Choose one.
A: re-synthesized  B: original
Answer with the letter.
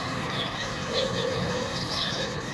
A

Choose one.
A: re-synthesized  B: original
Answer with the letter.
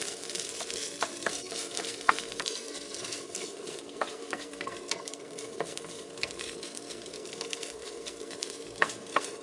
A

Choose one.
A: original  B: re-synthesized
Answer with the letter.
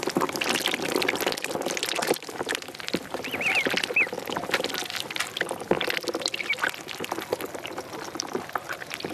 A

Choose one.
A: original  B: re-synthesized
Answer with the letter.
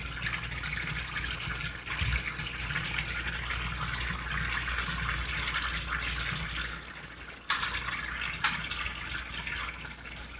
A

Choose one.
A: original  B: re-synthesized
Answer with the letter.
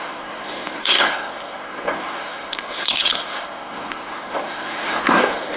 B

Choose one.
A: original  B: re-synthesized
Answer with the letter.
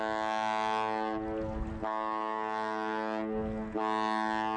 A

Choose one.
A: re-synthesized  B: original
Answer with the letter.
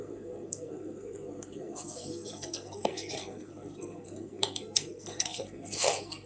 A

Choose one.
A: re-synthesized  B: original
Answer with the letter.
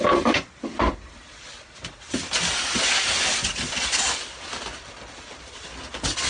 B